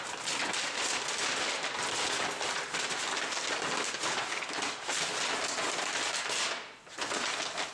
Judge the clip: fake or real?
real